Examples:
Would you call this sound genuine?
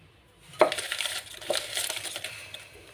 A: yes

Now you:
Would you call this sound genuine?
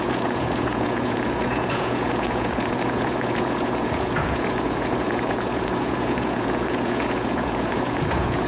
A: no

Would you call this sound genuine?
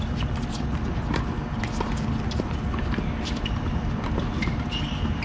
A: yes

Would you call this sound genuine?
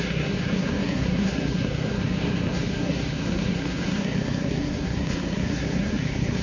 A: no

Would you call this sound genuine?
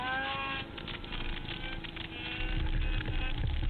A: yes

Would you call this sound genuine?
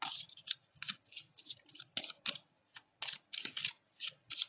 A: yes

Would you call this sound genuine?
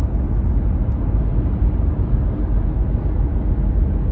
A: yes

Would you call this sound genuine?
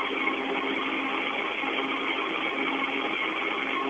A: yes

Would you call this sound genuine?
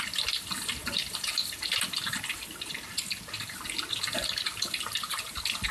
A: yes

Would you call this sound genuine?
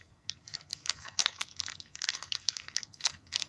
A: no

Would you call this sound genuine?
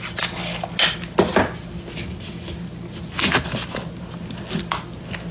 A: yes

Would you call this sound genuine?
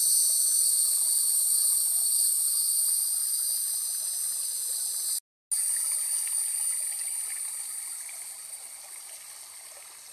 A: yes